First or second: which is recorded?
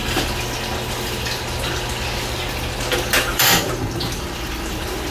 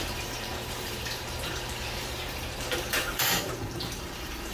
first